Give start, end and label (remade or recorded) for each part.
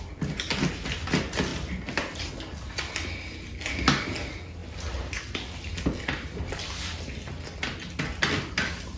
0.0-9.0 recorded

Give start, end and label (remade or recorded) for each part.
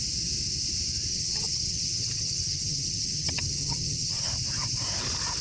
0.0-1.1 recorded; 1.1-4.3 remade; 4.3-5.4 recorded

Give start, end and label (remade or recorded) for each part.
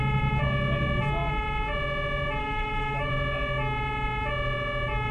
0.0-2.4 recorded; 2.4-3.1 remade; 3.1-5.1 recorded